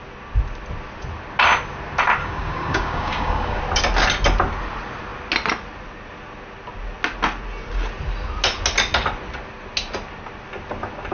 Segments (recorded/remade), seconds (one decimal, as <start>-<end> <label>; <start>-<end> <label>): 0.0-2.2 recorded; 2.2-3.6 remade; 3.6-11.1 recorded